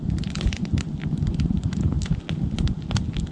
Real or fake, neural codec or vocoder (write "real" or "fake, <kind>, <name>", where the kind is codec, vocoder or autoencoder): real